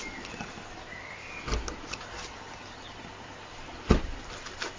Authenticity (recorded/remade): recorded